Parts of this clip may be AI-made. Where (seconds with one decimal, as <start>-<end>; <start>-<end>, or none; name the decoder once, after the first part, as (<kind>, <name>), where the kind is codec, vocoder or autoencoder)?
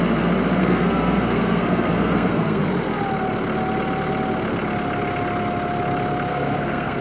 0.6-2.6 (codec, SNAC); 6.3-7.0